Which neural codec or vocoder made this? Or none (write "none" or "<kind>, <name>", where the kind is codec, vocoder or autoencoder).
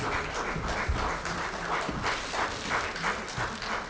none